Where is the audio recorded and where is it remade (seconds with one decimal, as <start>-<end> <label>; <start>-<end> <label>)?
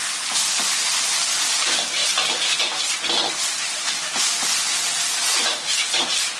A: 0.0-6.4 recorded